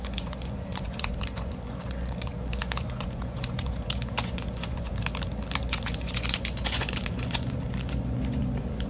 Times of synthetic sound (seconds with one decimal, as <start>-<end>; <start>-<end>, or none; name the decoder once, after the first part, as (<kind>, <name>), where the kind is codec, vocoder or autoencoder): 0.0-4.9 (vocoder, Vocos); 5.6-8.9